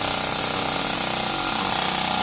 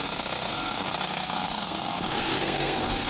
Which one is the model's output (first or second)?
second